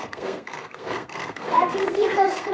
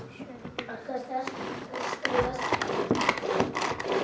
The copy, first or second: first